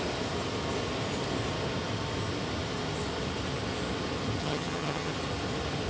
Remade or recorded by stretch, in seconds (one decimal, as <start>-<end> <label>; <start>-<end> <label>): 0.0-4.4 recorded; 4.4-5.1 remade; 5.1-5.9 recorded